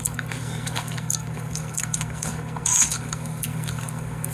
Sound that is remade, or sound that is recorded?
remade